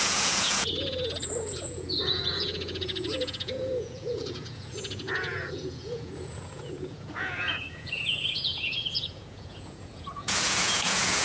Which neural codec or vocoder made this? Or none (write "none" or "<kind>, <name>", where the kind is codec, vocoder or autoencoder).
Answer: vocoder, Vocos